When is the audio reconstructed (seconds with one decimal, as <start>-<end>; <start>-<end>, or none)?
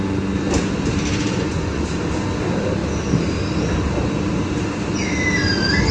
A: 1.2-2.0